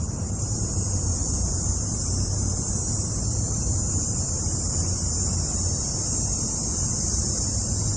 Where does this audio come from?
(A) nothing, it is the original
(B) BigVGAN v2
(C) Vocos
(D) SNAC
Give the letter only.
B